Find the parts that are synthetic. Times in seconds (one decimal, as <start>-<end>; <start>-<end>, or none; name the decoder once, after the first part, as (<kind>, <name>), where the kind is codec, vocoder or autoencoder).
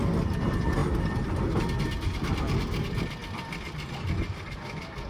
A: none